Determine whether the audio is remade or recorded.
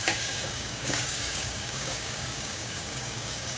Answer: remade